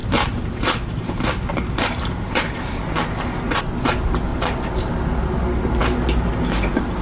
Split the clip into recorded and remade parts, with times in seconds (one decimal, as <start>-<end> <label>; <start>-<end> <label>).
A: 0.0-2.8 remade; 2.8-4.3 recorded; 4.3-5.0 remade; 5.0-7.0 recorded